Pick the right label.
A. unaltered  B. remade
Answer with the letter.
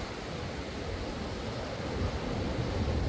A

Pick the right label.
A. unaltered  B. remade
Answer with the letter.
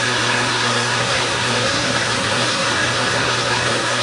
B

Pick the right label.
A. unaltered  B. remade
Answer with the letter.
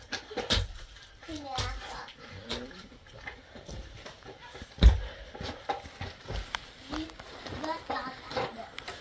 A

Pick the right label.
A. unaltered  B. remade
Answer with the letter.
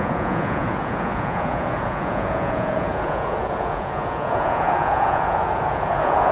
B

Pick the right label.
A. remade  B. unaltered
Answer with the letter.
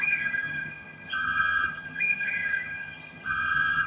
A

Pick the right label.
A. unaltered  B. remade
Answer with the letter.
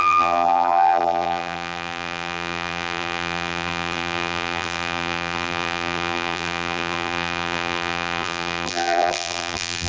B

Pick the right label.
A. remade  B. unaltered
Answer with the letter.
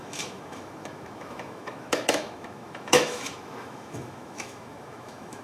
A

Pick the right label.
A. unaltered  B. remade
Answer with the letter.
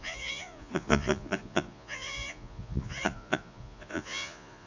B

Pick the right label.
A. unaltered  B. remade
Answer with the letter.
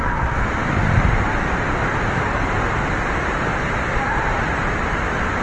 A